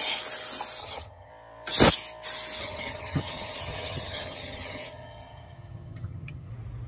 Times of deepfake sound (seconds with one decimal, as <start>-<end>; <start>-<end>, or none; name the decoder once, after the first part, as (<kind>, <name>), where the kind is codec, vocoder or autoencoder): 0.8-1.3 (vocoder, HiFi-GAN); 2.6-6.5